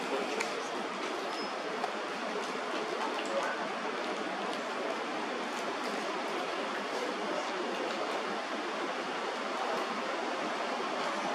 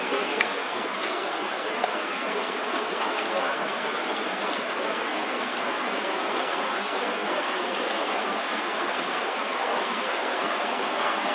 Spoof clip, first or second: second